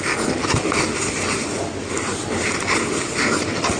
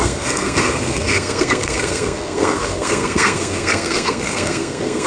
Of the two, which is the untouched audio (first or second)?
first